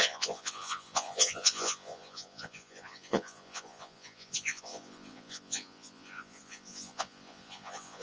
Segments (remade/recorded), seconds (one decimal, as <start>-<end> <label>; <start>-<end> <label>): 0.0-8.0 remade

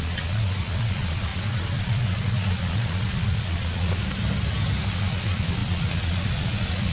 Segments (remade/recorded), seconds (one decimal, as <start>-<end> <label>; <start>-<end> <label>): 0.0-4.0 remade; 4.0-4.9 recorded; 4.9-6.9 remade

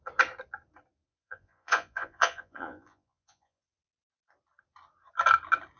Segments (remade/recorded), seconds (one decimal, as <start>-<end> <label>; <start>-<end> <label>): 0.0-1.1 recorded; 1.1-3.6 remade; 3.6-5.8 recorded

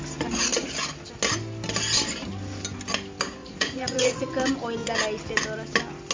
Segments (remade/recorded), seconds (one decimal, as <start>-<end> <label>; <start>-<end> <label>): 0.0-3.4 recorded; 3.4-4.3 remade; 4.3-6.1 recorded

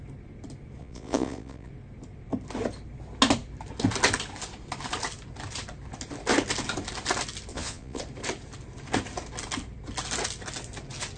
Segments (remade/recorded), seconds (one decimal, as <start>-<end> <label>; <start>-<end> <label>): 0.0-0.8 recorded; 0.8-1.7 remade; 1.7-7.5 recorded; 7.5-8.0 remade; 8.0-11.2 recorded

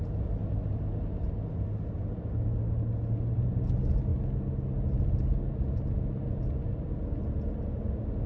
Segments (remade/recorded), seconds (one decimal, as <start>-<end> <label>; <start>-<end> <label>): 0.0-8.3 recorded